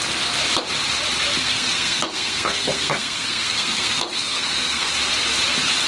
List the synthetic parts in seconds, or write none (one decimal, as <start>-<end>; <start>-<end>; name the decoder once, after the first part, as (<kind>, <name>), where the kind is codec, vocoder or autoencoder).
1.4-4.9 (codec, SNAC)